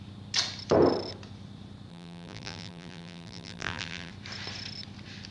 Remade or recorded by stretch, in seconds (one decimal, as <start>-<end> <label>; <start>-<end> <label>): 0.0-1.9 recorded; 1.9-4.1 remade; 4.1-5.3 recorded